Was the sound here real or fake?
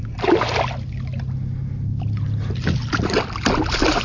real